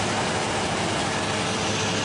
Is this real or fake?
real